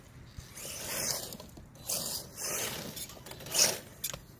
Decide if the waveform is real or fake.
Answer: real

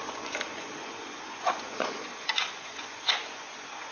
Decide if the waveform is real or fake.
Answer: fake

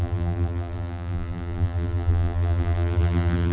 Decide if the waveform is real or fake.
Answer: fake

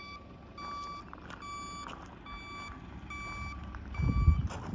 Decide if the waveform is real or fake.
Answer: real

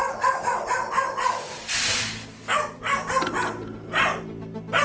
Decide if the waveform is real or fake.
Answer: real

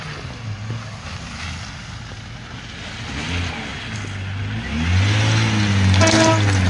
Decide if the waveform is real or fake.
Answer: real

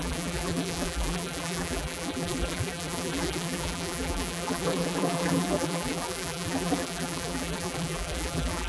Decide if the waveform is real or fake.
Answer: fake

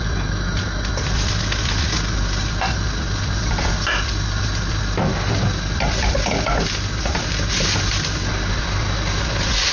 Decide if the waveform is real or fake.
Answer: real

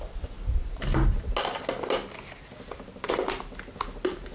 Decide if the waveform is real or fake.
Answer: real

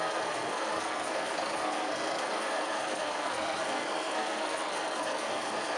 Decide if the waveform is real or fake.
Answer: fake